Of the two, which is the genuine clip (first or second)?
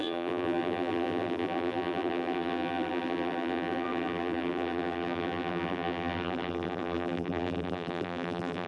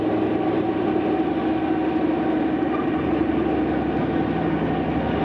second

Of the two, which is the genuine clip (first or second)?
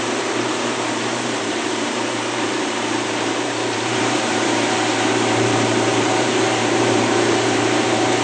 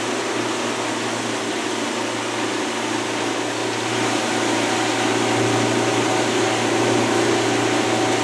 second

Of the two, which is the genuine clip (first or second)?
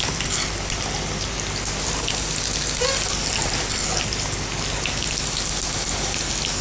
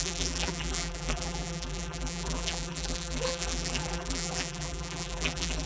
first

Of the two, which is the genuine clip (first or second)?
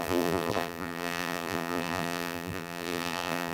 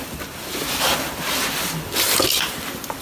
second